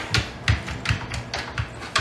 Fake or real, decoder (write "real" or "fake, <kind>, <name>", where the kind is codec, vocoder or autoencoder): real